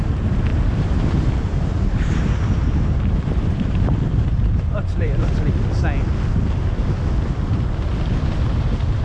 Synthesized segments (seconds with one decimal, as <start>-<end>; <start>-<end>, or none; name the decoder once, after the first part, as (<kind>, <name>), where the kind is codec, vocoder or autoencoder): 0.5-5.2 (vocoder, BigVGAN v2)